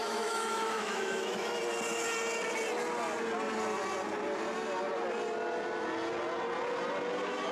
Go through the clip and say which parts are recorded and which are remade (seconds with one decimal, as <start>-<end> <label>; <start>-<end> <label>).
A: 0.0-1.6 remade; 1.6-7.5 recorded

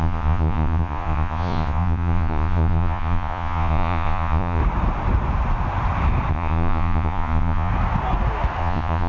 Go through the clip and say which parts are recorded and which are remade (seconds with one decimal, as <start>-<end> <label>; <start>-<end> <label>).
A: 0.0-4.6 remade; 4.6-6.3 recorded; 6.3-7.7 remade; 7.7-8.6 recorded; 8.6-9.1 remade

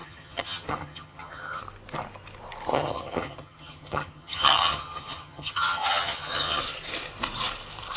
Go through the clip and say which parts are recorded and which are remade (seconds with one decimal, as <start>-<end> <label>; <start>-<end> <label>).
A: 0.0-1.6 remade; 1.6-2.7 recorded; 2.7-6.6 remade; 6.6-8.0 recorded

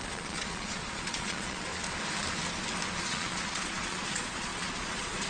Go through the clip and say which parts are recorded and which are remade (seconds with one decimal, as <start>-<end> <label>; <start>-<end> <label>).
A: 0.0-1.7 remade; 1.7-3.0 recorded; 3.0-5.3 remade

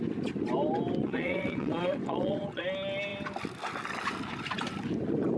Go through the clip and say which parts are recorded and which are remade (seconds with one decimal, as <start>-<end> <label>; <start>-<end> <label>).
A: 0.0-1.0 recorded; 1.0-2.6 remade; 2.6-5.4 recorded

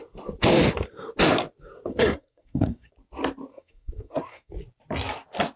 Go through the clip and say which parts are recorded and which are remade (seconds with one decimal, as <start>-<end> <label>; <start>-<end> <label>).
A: 0.0-1.9 recorded; 1.9-2.9 remade; 2.9-3.5 recorded; 3.5-4.5 remade; 4.5-5.6 recorded

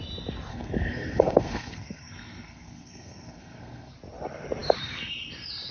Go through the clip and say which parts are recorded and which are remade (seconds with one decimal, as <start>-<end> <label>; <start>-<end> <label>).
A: 0.0-0.5 recorded; 0.5-3.9 remade; 3.9-5.7 recorded